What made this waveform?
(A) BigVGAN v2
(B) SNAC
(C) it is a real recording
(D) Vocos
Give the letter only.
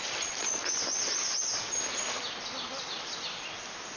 C